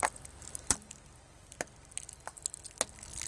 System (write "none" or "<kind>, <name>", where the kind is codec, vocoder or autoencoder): none